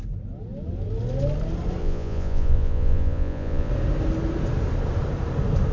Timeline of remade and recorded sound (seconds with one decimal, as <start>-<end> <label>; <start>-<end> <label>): 0.0-1.8 recorded; 1.8-3.7 remade; 3.7-5.7 recorded